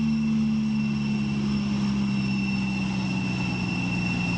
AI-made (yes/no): no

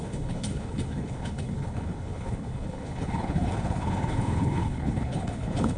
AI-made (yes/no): yes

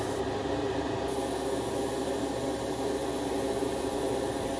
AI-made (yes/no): no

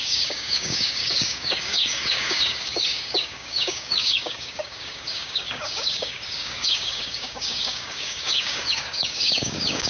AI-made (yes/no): yes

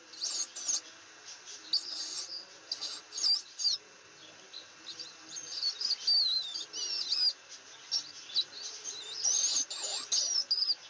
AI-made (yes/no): no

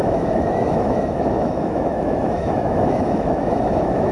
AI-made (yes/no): yes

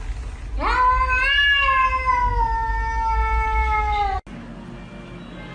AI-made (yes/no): no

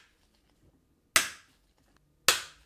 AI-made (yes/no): no